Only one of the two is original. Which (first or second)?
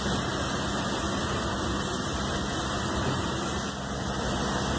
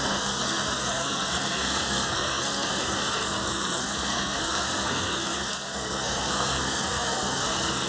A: first